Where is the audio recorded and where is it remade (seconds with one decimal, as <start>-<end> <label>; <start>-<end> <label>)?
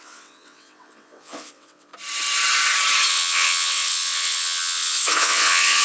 0.0-1.9 remade; 1.9-3.1 recorded; 3.1-5.8 remade